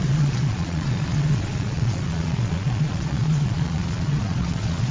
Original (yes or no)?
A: no